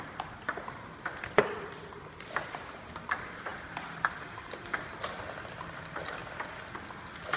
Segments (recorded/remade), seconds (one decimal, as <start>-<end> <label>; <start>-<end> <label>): 0.0-6.2 remade; 6.2-7.4 recorded